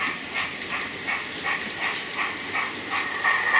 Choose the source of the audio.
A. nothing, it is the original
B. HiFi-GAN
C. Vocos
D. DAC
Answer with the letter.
A